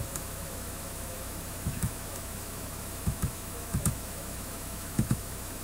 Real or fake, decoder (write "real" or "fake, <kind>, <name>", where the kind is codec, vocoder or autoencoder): fake, autoencoder, DAC-VAE